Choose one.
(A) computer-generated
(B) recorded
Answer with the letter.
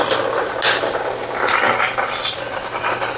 B